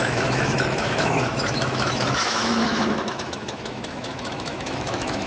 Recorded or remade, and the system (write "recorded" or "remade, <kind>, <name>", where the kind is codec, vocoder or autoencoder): remade, autoencoder, DAC-VAE